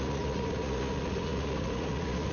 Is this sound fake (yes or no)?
yes